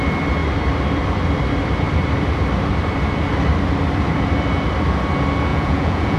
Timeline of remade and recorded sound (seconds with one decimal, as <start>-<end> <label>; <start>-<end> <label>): 0.0-5.5 recorded; 5.5-6.2 remade